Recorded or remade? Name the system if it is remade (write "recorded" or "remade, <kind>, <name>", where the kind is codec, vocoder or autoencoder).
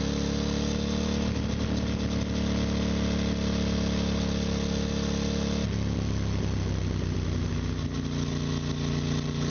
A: recorded